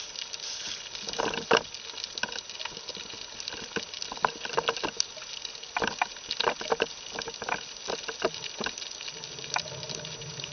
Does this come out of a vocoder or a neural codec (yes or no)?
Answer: no